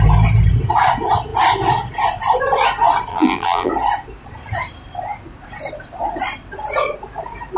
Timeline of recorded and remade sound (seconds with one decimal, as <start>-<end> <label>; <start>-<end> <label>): 0.0-3.1 recorded; 3.1-3.7 remade; 3.7-7.6 recorded